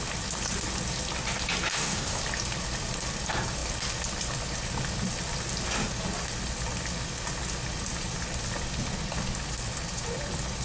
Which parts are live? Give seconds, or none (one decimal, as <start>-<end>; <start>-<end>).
0.0-1.7; 2.2-10.6